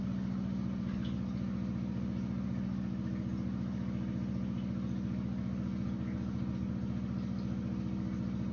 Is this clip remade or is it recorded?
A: recorded